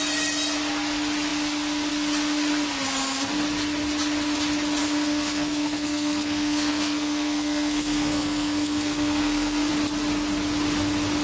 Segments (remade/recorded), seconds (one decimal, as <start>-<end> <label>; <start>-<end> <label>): 0.0-4.8 recorded; 4.8-9.7 remade; 9.7-11.2 recorded